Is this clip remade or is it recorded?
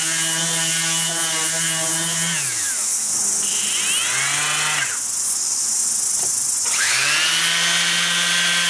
recorded